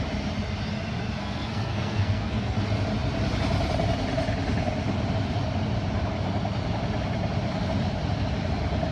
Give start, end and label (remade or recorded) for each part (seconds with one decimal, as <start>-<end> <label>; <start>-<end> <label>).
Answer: 0.0-1.2 recorded; 1.2-2.6 remade; 2.6-8.9 recorded